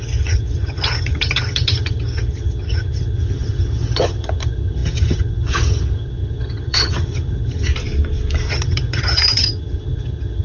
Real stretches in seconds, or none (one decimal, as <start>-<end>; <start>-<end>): 7.7-8.5